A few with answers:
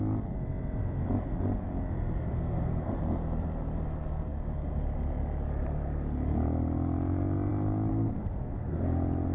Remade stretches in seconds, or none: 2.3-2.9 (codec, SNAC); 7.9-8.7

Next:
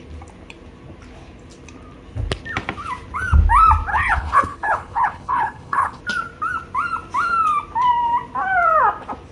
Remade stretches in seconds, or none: 3.9-6.0 (codec, HILCodec)

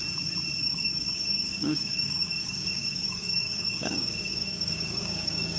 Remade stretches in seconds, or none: 0.6-5.6 (codec, DAC)

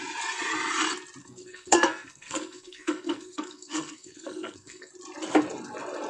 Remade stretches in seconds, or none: 1.2-4.9 (codec, SNAC)

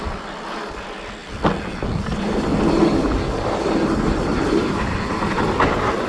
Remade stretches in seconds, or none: none

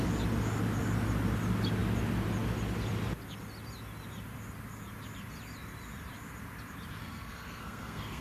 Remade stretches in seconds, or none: 7.0-8.2 (codec, SNAC)